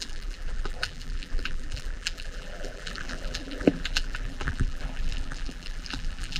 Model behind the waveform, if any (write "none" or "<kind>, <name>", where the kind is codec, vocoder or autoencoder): vocoder, BigVGAN v2